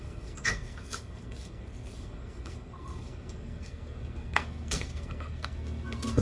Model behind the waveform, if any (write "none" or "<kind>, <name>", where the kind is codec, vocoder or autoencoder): codec, SNAC